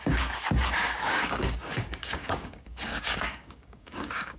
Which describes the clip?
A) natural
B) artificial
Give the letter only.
B